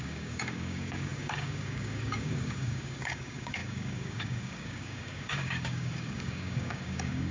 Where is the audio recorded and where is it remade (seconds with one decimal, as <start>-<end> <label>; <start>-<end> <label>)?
0.0-7.3 remade